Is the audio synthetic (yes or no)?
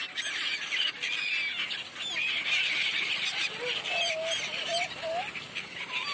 no